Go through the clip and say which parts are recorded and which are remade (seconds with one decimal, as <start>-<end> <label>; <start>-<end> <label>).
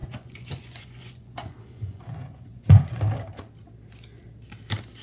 0.0-3.0 remade; 3.0-5.0 recorded